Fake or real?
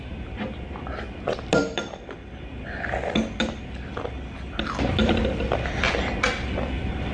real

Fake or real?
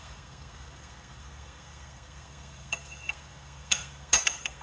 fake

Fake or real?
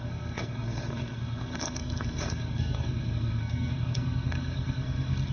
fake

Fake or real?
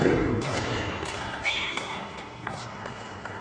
fake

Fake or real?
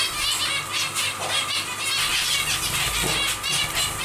real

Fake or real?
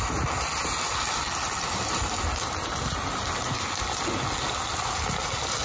real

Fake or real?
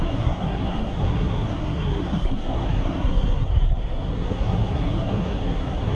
fake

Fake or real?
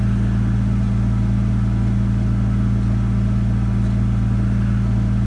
real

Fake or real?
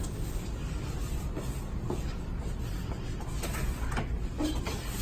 real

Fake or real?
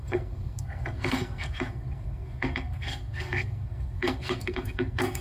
fake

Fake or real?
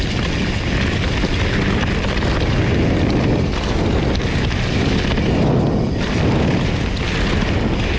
real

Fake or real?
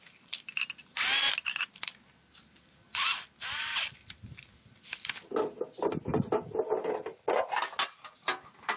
real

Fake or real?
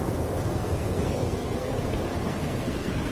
fake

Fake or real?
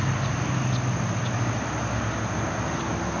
real